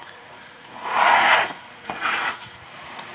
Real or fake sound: fake